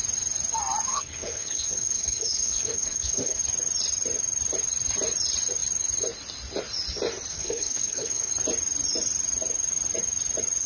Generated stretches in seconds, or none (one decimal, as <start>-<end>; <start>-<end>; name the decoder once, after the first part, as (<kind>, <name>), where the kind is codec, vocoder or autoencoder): 0.9-3.4 (codec, HILCodec); 7.3-8.3

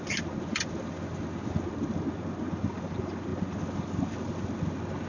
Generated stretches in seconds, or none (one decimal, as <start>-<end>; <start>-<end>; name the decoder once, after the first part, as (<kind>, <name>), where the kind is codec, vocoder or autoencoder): none

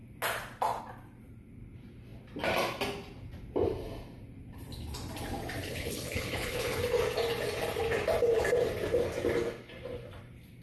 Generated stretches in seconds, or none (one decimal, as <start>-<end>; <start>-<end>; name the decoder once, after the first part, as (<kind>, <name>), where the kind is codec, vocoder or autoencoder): 5.6-6.8 (codec, HILCodec)